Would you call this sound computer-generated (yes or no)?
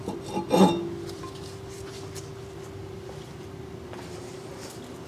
no